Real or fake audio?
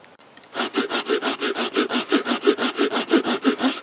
fake